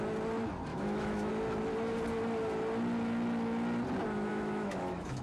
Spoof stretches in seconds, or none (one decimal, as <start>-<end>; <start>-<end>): 0.7-1.3; 4.3-5.2